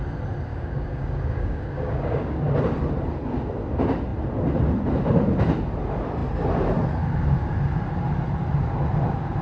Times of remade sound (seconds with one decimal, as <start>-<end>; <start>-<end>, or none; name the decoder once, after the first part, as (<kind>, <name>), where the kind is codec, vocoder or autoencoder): 0.5-2.4 (codec, DAC)